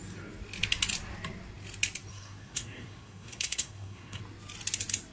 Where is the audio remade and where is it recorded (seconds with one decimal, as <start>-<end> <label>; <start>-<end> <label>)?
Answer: 0.0-2.1 recorded; 2.1-4.2 remade; 4.2-5.1 recorded